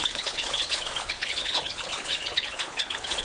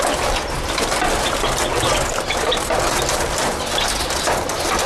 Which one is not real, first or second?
first